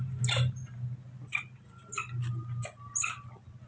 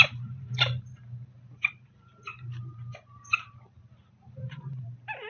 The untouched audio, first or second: first